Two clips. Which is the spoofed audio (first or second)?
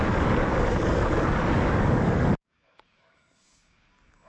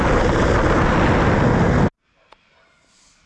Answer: first